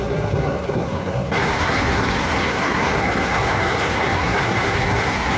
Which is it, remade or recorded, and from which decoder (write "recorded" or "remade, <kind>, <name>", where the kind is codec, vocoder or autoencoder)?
remade, codec, SNAC